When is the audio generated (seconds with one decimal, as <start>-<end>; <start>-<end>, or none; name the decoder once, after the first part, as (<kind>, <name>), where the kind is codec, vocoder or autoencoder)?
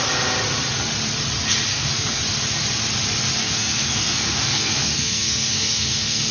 1.7-2.2 (codec, SNAC); 3.4-6.3